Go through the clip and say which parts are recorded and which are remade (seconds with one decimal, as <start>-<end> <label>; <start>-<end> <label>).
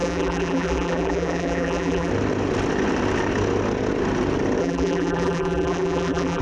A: 0.0-2.1 remade; 2.1-4.6 recorded; 4.6-6.4 remade